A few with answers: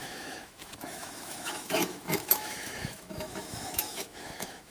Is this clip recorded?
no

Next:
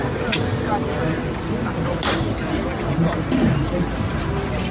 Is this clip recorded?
yes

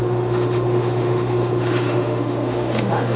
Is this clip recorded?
no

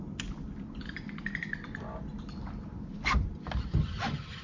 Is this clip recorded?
yes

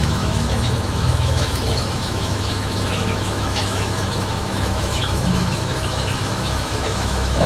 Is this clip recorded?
no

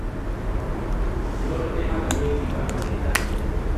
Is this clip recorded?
yes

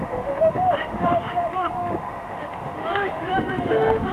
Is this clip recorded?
no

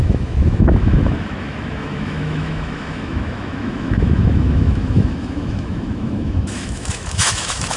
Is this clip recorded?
no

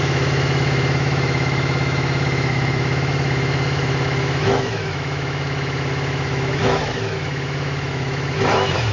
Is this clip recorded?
no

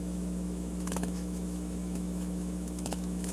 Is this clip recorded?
no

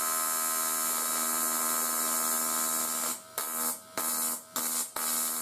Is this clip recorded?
yes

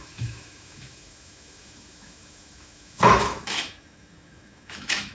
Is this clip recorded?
no